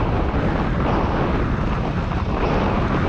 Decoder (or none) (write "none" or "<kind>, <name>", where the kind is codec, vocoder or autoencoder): none